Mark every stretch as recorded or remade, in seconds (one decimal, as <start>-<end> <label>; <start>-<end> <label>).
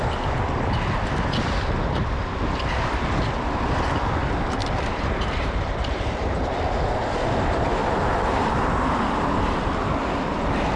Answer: 0.0-4.6 recorded; 4.6-6.6 remade; 6.6-7.8 recorded; 7.8-8.5 remade; 8.5-10.8 recorded